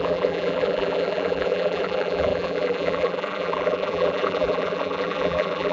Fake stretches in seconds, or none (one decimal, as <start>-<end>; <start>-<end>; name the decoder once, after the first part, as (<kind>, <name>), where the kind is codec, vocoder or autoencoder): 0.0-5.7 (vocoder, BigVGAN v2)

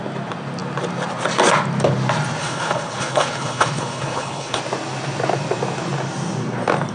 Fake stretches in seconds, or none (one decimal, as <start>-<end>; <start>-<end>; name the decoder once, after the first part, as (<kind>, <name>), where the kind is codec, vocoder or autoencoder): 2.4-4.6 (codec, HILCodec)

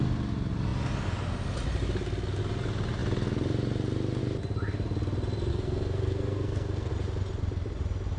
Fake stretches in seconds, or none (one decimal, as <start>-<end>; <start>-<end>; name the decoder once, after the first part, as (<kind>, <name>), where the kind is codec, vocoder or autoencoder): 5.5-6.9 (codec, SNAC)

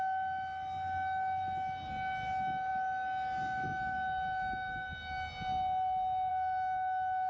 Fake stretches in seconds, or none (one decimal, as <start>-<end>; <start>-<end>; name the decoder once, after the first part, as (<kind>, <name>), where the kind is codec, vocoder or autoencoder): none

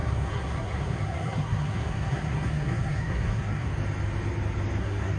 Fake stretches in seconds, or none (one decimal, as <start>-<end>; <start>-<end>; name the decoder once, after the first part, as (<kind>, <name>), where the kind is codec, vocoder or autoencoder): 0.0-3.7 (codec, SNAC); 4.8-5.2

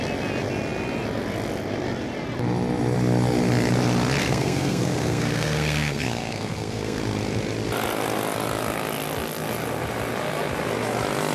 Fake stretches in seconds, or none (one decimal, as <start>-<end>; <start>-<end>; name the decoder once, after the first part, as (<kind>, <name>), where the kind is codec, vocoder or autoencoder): 4.2-7.0 (codec, SNAC)